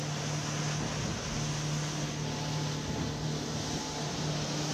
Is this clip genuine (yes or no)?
yes